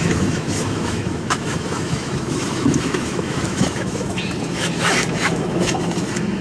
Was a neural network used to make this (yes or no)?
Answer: yes